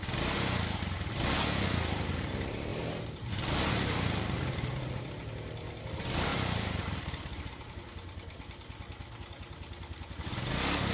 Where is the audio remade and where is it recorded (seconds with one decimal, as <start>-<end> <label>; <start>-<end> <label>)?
0.0-2.7 recorded; 2.7-5.1 remade; 5.1-6.3 recorded; 6.3-7.5 remade; 7.5-10.9 recorded